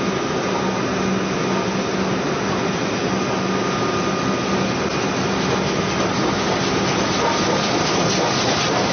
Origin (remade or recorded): recorded